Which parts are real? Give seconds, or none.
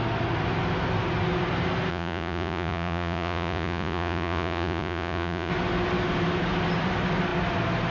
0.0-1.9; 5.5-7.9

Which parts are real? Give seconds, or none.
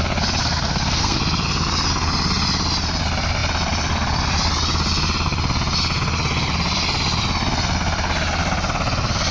0.0-0.4; 1.2-9.3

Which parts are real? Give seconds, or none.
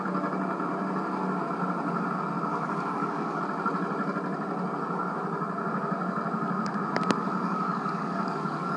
0.0-2.5; 3.4-7.2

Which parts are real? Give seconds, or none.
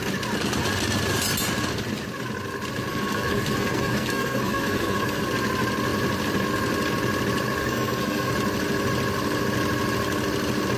0.0-2.9; 5.3-7.6; 8.3-10.8